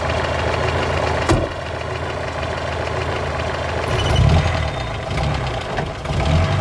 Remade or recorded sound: recorded